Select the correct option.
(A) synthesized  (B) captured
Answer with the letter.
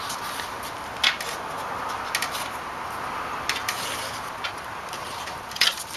B